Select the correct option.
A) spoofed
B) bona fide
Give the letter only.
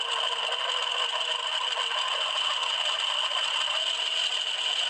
B